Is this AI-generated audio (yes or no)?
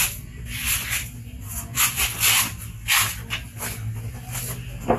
no